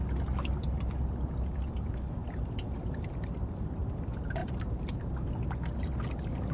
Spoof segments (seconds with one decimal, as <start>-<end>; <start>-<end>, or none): 2.2-3.7; 4.4-5.0